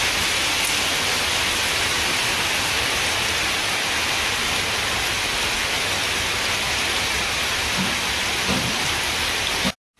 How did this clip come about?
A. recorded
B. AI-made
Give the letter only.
A